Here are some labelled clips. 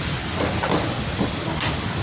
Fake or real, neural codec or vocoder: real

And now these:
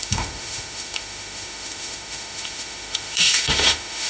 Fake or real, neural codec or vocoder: fake, autoencoder, DAC-VAE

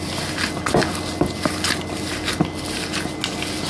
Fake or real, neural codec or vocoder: real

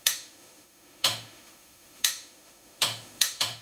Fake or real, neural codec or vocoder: fake, autoencoder, DAC-VAE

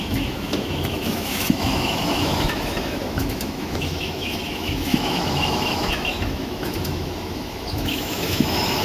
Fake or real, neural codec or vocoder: fake, autoencoder, DAC-VAE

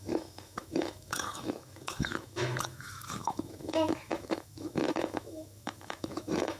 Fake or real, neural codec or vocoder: fake, autoencoder, DAC-VAE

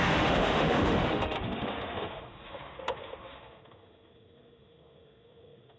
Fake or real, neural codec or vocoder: fake, autoencoder, DAC-VAE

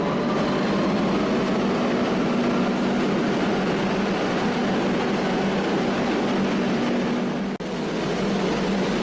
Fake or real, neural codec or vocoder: real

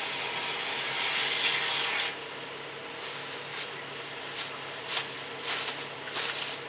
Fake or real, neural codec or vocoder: real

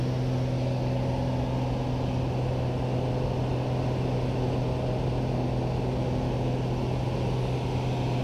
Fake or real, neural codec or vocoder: real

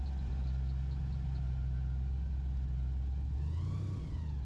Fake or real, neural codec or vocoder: real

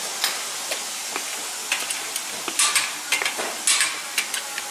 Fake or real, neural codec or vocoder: real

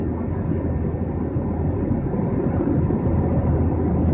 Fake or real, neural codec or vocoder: real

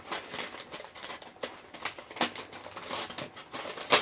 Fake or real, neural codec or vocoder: real